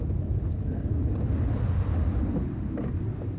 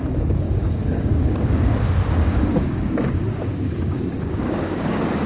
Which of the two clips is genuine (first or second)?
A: first